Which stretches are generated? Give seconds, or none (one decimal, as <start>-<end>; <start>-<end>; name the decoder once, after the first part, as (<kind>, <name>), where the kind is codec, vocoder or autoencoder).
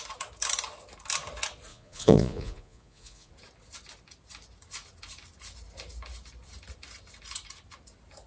1.7-3.3 (vocoder, Vocos)